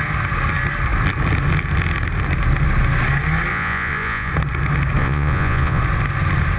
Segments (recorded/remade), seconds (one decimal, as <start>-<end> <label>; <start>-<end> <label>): 0.0-3.5 recorded; 3.5-4.3 remade; 4.3-5.0 recorded; 5.0-5.8 remade; 5.8-6.6 recorded